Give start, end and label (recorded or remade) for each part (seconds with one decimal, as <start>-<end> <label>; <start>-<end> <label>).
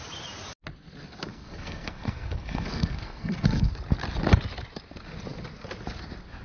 0.0-1.3 recorded; 1.3-3.7 remade; 3.7-6.4 recorded